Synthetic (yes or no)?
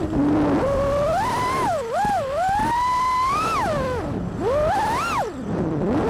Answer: no